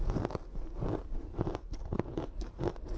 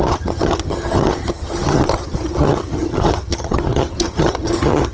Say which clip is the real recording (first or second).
first